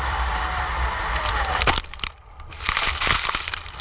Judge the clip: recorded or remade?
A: remade